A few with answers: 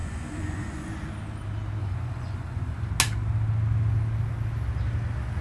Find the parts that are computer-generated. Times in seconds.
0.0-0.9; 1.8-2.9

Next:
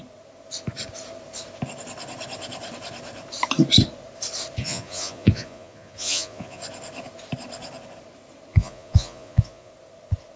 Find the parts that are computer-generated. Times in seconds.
4.6-6.6; 8.5-9.7

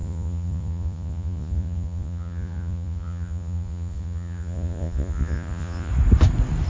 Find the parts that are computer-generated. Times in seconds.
0.0-5.9

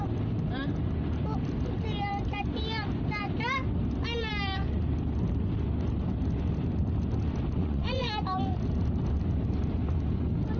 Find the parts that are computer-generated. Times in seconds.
7.6-8.1

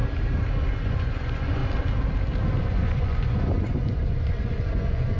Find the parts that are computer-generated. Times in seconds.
0.8-1.6; 2.6-5.2

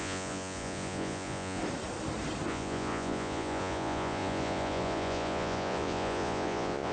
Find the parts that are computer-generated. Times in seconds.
0.0-1.6; 2.5-6.9

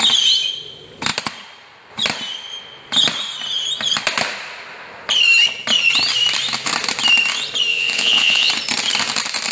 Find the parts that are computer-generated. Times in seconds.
7.7-8.5

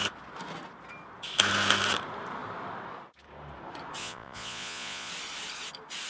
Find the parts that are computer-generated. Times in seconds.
4.0-5.1